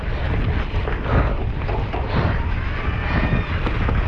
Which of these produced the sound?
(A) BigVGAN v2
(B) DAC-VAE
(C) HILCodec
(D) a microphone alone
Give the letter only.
D